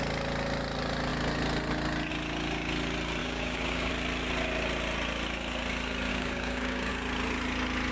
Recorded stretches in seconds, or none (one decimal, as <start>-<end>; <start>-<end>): 0.0-3.2; 3.9-6.1; 6.9-7.9